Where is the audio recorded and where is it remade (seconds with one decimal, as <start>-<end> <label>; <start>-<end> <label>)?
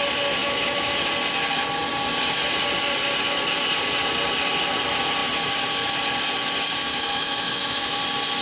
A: 0.0-0.4 recorded; 0.4-1.1 remade; 1.1-6.9 recorded; 6.9-8.0 remade; 8.0-8.4 recorded